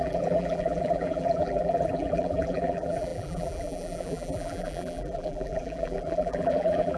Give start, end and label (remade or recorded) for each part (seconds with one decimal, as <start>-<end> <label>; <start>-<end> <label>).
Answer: 0.0-7.0 remade